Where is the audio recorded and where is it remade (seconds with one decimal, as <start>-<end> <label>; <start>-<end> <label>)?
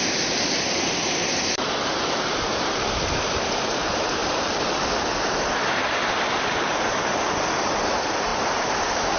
0.0-8.3 recorded; 8.3-9.2 remade